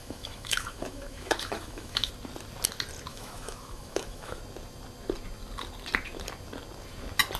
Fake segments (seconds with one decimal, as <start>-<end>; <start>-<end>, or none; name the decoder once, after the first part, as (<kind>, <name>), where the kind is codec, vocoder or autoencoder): 0.0-2.1 (autoencoder, DAC-VAE); 3.1-4.4